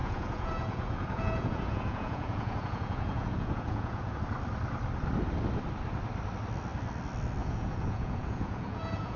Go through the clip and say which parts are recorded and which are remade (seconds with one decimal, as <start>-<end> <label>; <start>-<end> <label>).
0.0-4.2 remade; 4.2-7.4 recorded; 7.4-9.2 remade